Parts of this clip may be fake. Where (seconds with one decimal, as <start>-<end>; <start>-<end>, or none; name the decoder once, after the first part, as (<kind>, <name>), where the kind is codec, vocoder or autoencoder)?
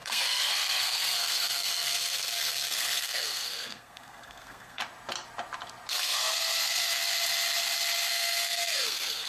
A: 0.0-4.8 (codec, SNAC); 5.9-7.0; 8.1-9.3